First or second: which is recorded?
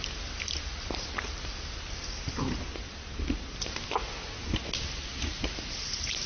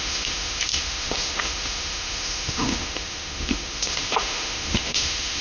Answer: first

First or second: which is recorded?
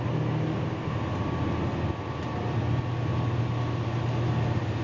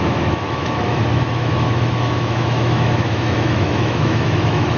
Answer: first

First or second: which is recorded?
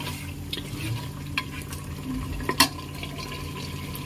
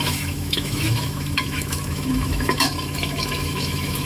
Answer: first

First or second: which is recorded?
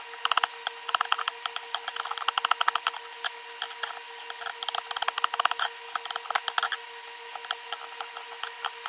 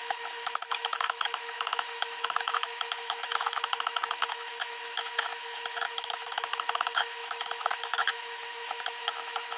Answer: first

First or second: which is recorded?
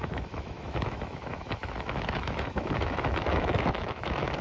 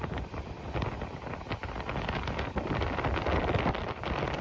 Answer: second